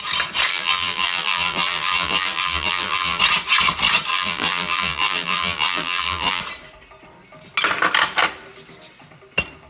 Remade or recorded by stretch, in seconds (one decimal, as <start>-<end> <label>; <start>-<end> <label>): 0.0-0.5 recorded; 0.5-3.2 remade; 3.2-4.1 recorded; 4.1-6.4 remade; 6.4-9.7 recorded